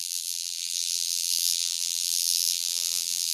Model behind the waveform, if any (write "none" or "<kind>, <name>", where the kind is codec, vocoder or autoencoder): vocoder, BigVGAN v2